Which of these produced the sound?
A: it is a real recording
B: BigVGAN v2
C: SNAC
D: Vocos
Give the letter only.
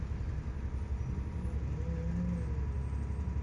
A